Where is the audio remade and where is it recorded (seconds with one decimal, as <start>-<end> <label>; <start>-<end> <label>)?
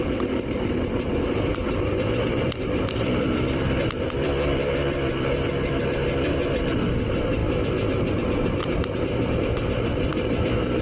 0.0-7.4 remade; 7.4-7.9 recorded; 7.9-10.8 remade